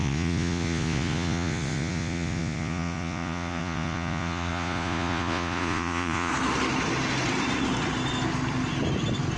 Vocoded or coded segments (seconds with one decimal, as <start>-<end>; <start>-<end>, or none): 0.0-6.3